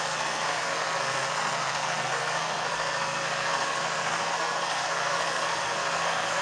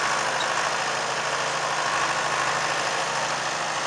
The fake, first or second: first